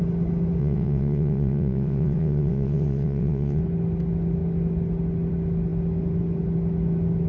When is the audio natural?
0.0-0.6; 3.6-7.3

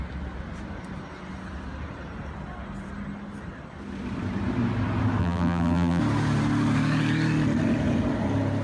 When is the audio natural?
0.0-5.2; 6.0-8.6

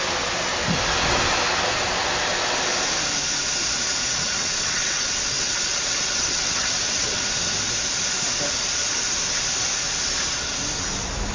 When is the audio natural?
0.0-4.2; 7.2-11.3

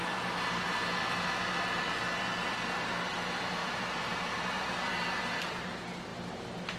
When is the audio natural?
0.0-3.6; 4.8-6.8

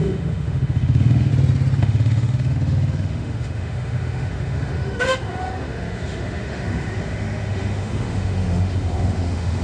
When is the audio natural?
1.3-1.8